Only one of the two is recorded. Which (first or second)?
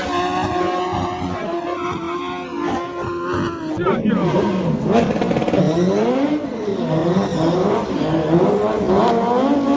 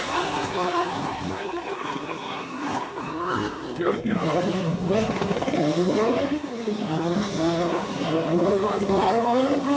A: first